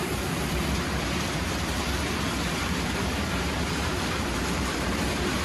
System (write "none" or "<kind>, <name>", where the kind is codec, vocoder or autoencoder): vocoder, BigVGAN v2